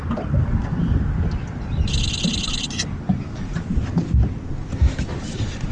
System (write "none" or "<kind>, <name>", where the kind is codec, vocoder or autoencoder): none